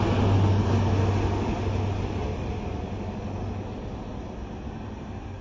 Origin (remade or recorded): recorded